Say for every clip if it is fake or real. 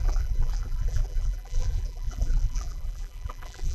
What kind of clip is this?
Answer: fake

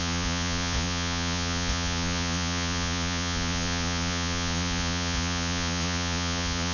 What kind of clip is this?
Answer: fake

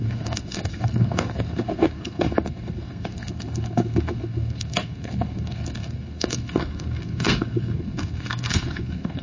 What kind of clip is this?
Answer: fake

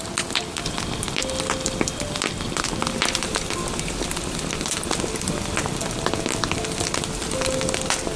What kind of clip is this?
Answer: real